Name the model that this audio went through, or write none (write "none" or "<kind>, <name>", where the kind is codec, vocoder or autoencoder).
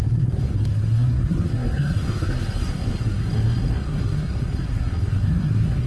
codec, SNAC